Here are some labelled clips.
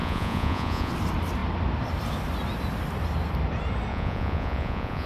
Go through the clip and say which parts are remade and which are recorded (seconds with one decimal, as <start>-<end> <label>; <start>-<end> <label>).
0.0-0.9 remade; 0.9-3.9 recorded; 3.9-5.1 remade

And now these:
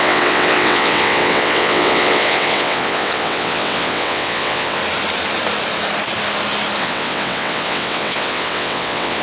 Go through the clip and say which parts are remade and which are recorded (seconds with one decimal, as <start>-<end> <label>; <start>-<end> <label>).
0.0-4.8 remade; 4.8-6.8 recorded; 6.8-9.2 remade

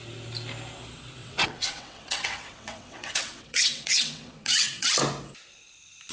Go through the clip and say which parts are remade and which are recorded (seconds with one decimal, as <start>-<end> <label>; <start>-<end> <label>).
0.0-1.2 recorded; 1.2-4.9 remade; 4.9-6.1 recorded

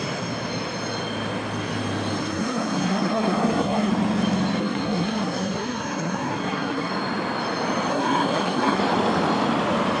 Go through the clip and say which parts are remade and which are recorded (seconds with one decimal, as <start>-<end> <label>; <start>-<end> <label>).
0.0-2.2 recorded; 2.2-3.9 remade; 3.9-4.6 recorded; 4.6-6.9 remade; 6.9-7.9 recorded; 7.9-8.8 remade; 8.8-10.0 recorded